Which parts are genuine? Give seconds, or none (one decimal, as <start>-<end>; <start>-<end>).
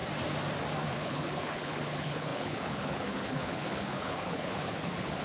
0.0-0.9